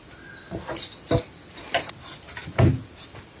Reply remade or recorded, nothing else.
recorded